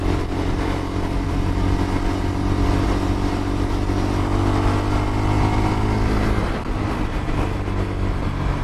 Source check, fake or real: real